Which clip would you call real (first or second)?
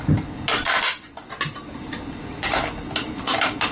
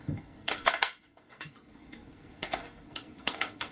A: first